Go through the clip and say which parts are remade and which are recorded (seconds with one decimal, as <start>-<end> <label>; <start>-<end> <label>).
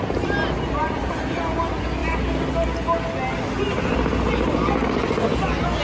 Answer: 0.0-5.8 recorded